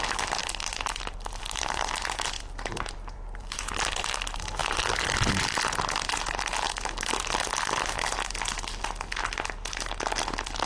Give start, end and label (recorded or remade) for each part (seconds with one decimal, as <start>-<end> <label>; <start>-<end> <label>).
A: 0.0-0.4 recorded; 0.4-3.7 remade; 3.7-4.6 recorded; 4.6-5.6 remade; 5.6-10.7 recorded